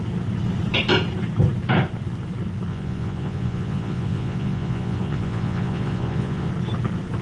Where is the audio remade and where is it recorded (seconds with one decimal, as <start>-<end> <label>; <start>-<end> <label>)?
0.0-2.7 recorded; 2.7-6.5 remade; 6.5-7.2 recorded